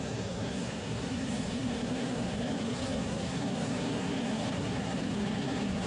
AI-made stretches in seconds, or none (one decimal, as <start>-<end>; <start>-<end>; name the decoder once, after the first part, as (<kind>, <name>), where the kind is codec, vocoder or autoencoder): 0.0-5.9 (codec, SNAC)